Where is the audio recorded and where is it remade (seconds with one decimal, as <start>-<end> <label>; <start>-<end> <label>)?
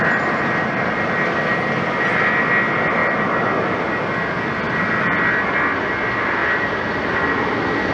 0.0-3.0 recorded; 3.0-3.6 remade; 3.6-6.4 recorded; 6.4-7.5 remade; 7.5-7.9 recorded